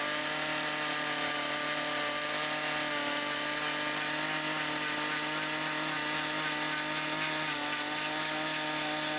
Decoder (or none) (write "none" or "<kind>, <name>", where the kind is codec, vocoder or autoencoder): none